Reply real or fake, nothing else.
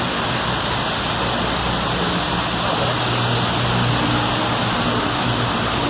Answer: real